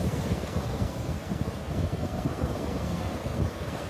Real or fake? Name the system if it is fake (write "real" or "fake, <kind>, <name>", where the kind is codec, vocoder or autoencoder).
fake, codec, SNAC